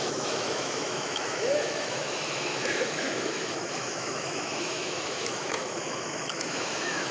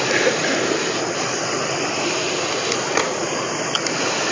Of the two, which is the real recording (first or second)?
second